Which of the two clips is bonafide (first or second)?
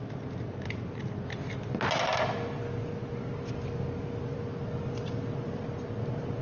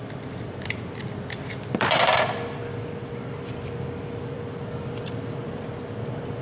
first